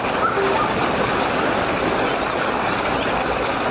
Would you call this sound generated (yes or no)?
no